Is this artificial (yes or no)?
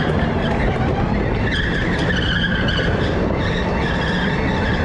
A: no